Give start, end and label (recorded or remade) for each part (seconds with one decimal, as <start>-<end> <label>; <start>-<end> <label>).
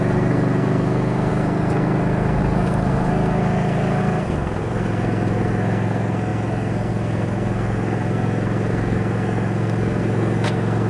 0.0-10.9 remade